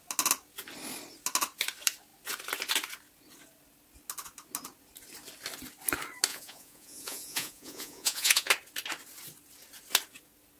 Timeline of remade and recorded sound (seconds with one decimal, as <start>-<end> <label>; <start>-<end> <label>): 0.0-6.3 recorded; 6.3-8.5 remade; 8.5-10.6 recorded